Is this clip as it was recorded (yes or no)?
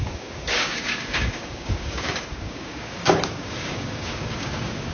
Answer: no